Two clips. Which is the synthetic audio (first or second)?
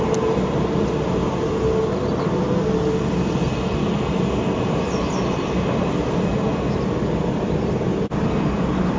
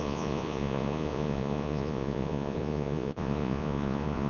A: second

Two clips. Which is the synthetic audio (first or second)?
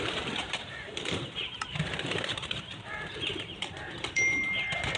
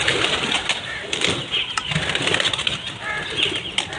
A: first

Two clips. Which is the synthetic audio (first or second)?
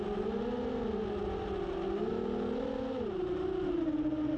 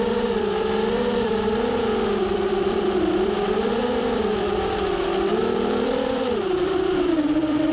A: second